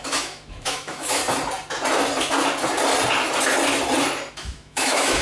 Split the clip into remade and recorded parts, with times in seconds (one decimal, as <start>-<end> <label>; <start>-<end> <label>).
0.0-1.2 remade; 1.2-4.3 recorded; 4.3-5.2 remade